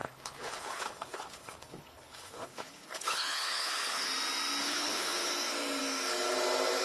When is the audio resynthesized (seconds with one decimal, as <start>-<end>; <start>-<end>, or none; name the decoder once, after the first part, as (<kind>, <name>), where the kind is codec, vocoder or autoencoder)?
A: 0.0-4.1 (codec, HILCodec); 4.6-5.3